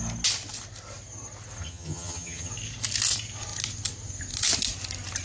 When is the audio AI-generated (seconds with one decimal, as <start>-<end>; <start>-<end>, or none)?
1.6-2.5